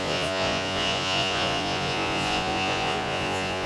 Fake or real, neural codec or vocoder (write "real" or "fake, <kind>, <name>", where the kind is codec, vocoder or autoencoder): fake, vocoder, Vocos